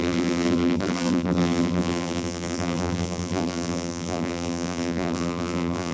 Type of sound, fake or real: fake